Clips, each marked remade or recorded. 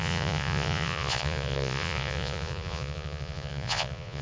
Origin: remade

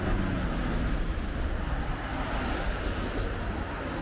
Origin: recorded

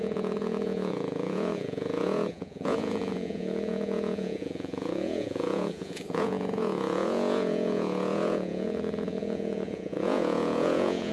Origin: remade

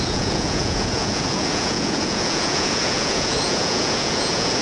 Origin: remade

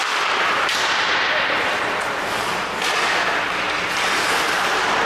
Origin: recorded